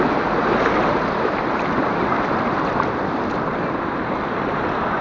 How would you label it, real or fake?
real